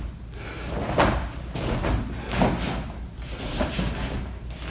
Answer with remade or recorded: recorded